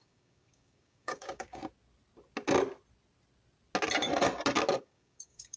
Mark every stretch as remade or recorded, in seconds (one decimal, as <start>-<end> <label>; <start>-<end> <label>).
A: 0.0-1.6 remade; 1.6-4.8 recorded; 4.8-5.6 remade